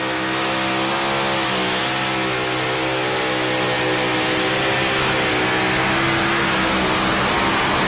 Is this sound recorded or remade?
recorded